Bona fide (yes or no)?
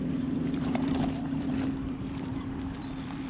no